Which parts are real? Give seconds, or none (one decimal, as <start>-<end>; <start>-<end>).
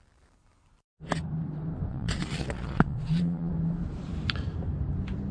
0.0-1.9; 3.5-5.3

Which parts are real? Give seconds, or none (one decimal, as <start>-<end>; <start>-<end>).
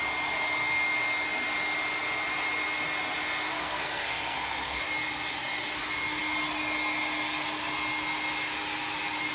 0.0-3.5; 4.8-9.3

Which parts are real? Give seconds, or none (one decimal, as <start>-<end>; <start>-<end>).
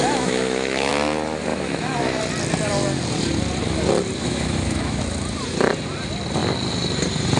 0.9-1.5; 2.2-4.2; 5.0-7.4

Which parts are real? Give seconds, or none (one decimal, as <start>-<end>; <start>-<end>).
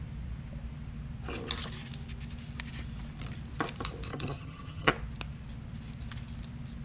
0.0-4.1; 4.9-6.8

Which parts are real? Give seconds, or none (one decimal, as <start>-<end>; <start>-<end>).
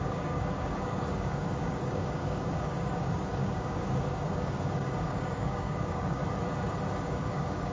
6.2-7.0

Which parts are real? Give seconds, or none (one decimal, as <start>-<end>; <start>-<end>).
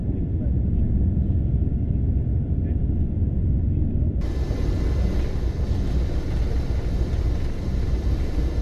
0.0-8.6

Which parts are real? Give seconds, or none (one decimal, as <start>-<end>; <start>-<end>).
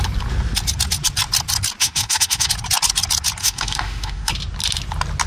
0.0-1.8; 2.5-3.4; 4.3-5.3